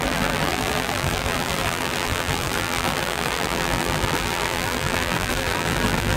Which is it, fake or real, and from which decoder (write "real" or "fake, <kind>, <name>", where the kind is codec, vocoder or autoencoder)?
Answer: fake, vocoder, BigVGAN v2